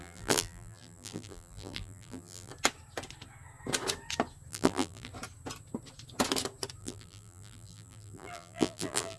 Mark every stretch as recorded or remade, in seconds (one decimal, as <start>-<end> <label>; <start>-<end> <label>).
0.0-2.5 remade; 2.5-4.5 recorded; 4.5-5.1 remade; 5.1-6.8 recorded; 6.8-9.2 remade